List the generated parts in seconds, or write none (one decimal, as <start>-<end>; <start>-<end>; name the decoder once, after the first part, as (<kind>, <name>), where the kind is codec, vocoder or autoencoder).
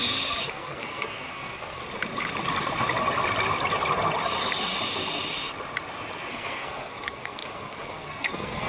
0.5-1.8 (codec, SNAC); 6.3-8.7